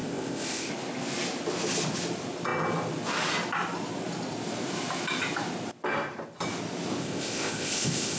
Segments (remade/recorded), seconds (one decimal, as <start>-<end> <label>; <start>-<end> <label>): 0.0-0.7 remade; 0.7-7.0 recorded; 7.0-8.2 remade